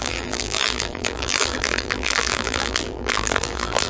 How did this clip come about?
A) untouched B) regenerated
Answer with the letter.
B